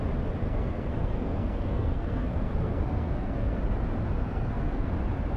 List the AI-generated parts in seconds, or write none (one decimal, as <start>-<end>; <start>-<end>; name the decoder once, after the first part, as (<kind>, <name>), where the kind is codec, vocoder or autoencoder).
0.4-3.6 (codec, SNAC); 4.2-4.9